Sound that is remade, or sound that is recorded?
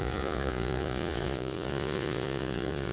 remade